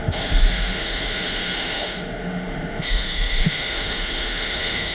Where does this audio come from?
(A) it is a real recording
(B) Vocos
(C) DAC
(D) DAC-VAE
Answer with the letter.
D